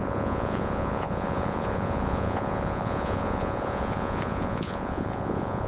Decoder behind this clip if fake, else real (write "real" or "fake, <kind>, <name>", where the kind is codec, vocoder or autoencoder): fake, vocoder, Vocos